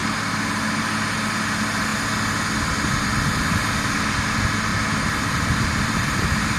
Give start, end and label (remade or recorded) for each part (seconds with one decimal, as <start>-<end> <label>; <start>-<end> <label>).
0.0-4.7 recorded; 4.7-6.6 remade